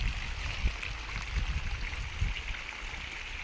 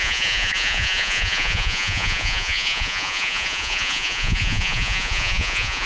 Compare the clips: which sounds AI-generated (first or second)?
second